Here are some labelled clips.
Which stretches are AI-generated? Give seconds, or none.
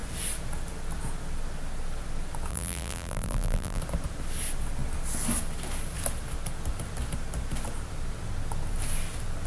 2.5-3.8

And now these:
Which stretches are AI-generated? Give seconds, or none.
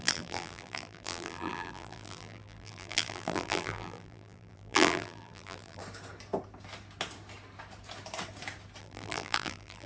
0.0-5.8; 8.8-9.9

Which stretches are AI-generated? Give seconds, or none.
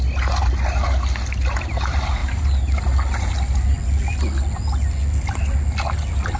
2.2-2.8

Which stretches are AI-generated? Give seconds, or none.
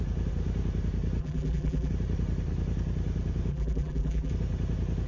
1.2-1.9; 3.5-4.3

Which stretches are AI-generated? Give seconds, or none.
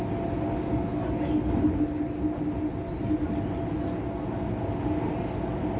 none